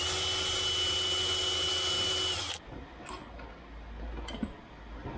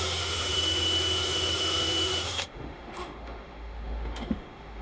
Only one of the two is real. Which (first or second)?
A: first